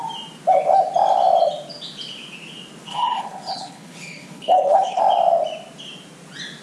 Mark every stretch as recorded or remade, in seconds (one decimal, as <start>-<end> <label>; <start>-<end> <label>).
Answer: 0.0-2.9 recorded; 2.9-5.0 remade; 5.0-6.6 recorded